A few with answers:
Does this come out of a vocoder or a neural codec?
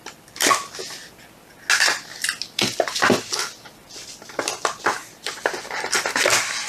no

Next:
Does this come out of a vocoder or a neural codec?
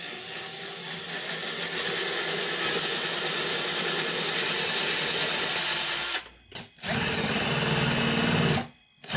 no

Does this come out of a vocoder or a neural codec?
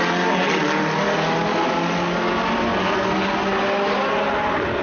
no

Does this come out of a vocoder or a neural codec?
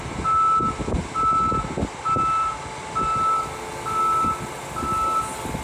no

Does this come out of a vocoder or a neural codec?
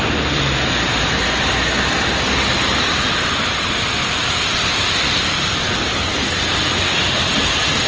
no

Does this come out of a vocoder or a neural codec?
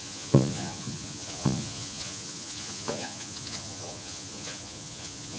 yes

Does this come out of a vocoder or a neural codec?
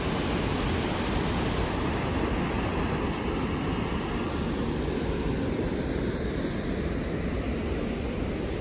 no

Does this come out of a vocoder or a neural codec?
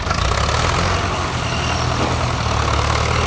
no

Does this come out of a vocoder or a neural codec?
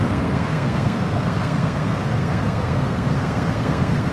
yes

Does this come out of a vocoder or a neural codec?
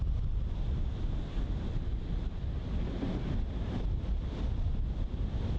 no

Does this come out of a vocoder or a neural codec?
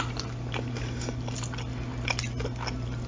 no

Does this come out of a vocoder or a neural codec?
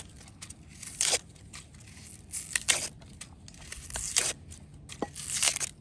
no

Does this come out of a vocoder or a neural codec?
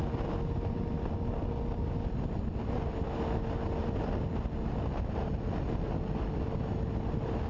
no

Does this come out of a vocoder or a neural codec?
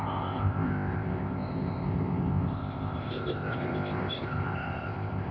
yes